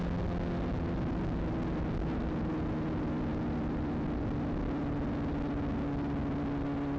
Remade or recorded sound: recorded